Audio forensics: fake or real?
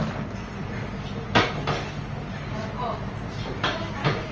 real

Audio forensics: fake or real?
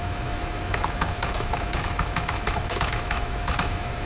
fake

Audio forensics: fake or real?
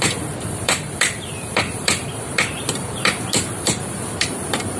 fake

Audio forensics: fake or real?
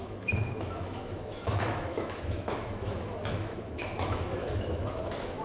fake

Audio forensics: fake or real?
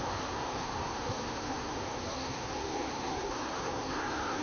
fake